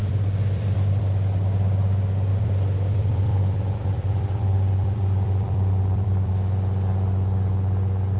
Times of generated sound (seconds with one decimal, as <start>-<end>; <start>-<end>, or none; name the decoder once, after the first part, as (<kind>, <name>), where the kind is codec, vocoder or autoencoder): 0.0-1.0 (vocoder, BigVGAN v2); 2.3-6.3